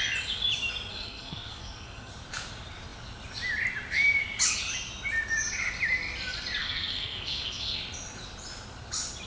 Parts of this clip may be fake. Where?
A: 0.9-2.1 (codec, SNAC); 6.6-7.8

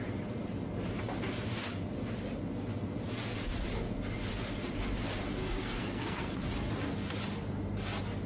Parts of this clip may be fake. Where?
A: 5.4-6.4 (codec, SNAC)

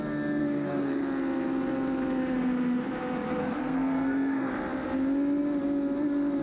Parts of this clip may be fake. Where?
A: 0.4-1.0 (codec, SNAC); 3.4-4.5

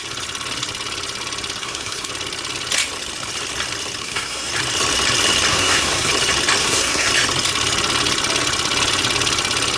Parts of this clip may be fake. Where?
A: 1.6-2.1 (codec, SNAC); 4.0-4.5; 5.5-6.1; 6.6-7.1

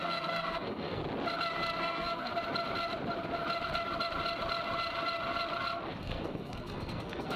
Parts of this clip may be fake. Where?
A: 0.0-1.0 (codec, SNAC); 1.8-2.3; 6.0-7.4